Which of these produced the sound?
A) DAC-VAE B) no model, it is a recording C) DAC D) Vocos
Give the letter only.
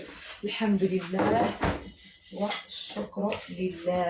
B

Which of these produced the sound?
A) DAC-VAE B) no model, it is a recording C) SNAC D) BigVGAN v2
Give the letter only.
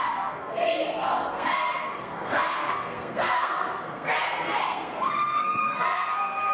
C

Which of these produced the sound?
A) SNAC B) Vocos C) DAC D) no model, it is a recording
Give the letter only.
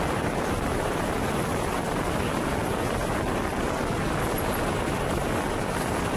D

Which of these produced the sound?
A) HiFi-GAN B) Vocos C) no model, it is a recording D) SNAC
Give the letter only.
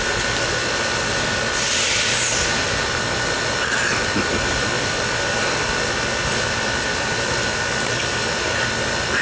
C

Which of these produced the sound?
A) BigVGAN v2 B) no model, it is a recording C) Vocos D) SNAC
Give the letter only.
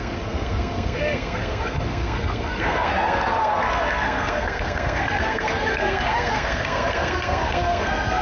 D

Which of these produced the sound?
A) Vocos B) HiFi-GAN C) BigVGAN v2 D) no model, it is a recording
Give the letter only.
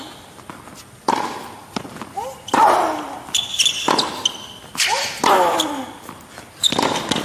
D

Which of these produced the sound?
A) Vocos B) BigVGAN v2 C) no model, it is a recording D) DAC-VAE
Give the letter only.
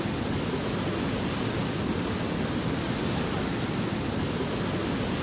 C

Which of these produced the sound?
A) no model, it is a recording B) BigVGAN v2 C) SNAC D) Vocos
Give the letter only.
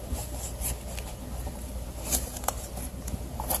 B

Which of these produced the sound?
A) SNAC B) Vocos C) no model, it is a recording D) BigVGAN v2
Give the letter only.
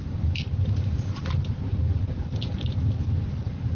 C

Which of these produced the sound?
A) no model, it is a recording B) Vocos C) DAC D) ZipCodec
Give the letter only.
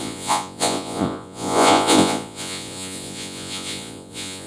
B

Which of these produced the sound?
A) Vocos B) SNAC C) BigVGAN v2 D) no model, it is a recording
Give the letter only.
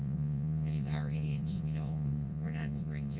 A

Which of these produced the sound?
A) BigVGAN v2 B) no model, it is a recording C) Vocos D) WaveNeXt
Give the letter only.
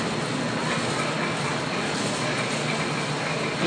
B